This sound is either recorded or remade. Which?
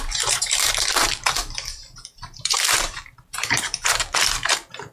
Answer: remade